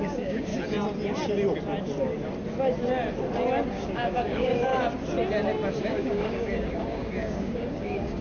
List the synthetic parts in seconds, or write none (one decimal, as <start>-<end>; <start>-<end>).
0.0-0.5; 3.7-4.7; 5.8-8.2